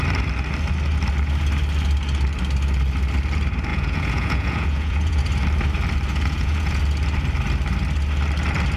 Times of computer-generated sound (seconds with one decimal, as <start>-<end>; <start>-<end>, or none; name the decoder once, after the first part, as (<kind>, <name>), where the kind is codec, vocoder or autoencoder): 3.7-5.2 (vocoder, Vocos); 6.1-6.8